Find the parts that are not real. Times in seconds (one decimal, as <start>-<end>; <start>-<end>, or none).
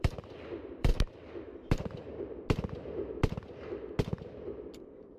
0.0-0.9; 4.0-5.2